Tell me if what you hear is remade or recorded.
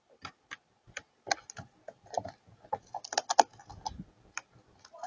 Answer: recorded